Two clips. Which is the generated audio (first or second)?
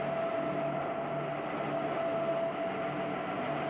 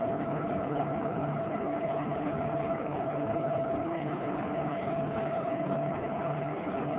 second